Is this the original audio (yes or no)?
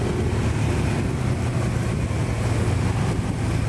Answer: yes